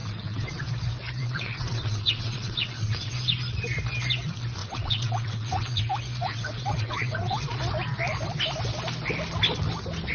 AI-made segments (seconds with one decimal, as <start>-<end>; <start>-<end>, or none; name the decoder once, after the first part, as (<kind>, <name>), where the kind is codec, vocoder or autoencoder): 0.0-0.6 (vocoder, WaveNeXt); 1.2-3.1; 4.6-5.8; 6.2-7.6